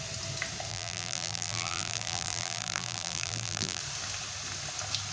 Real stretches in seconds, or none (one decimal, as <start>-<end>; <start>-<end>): 0.0-0.7; 3.8-5.1